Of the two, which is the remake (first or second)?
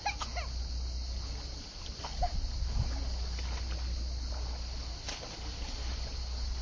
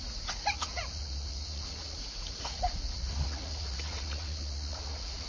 second